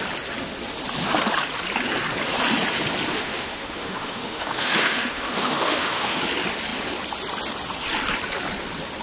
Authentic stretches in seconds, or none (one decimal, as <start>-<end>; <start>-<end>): 0.0-3.1; 6.2-9.0